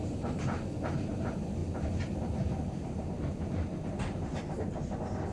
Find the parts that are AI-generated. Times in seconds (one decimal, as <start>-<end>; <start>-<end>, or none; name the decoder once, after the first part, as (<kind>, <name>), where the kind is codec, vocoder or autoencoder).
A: 1.6-4.8 (vocoder, BigVGAN v2)